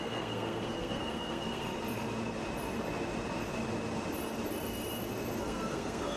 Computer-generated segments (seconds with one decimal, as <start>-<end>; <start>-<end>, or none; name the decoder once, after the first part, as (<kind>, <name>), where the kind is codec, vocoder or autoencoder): 0.0-1.7 (codec, SNAC); 5.4-6.2